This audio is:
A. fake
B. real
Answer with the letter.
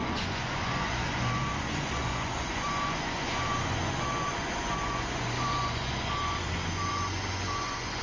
A